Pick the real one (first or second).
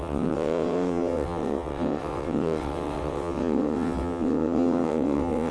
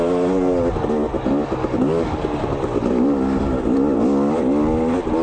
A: second